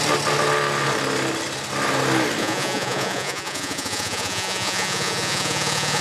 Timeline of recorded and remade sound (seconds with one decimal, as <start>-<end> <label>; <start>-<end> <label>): 0.0-2.4 recorded; 2.4-6.0 remade